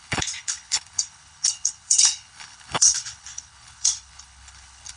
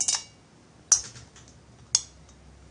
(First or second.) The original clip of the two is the second